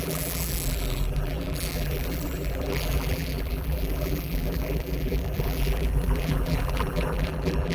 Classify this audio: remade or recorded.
remade